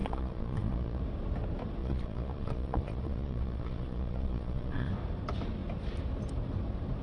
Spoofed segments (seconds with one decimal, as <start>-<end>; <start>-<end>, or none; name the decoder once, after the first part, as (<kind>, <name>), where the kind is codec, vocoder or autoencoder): 0.0-1.0 (vocoder, Vocos); 1.8-4.9